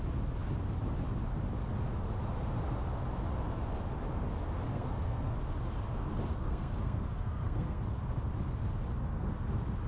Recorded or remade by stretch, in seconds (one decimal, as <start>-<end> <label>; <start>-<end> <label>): 0.0-4.7 recorded; 4.7-5.3 remade; 5.3-6.3 recorded; 6.3-7.8 remade; 7.8-9.9 recorded